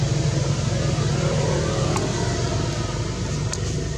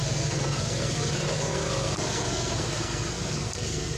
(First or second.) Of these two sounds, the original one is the first